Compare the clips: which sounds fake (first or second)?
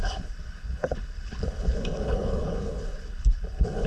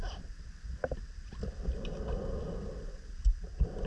first